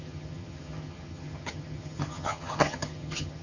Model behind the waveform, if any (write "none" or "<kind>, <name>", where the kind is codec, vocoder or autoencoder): vocoder, HiFi-GAN